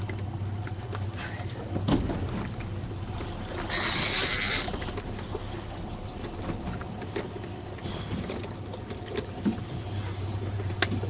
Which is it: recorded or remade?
recorded